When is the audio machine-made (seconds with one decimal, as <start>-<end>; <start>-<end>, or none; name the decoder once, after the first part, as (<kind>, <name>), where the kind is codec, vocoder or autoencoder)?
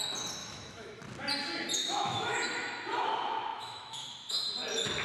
0.4-1.0 (autoencoder, DAC-VAE); 1.8-2.5; 3.5-4.5